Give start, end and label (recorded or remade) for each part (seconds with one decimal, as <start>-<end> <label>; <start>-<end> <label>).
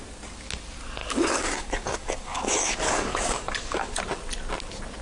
0.0-1.0 recorded; 1.0-4.0 remade; 4.0-5.0 recorded